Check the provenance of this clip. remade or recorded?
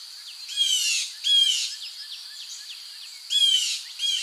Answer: recorded